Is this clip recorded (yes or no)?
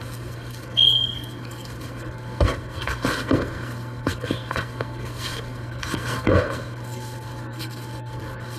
no